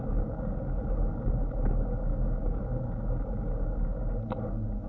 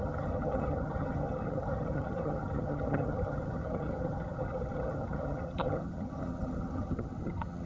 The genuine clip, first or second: first